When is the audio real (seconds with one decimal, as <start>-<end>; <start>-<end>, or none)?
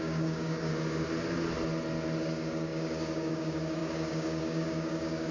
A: 0.7-2.2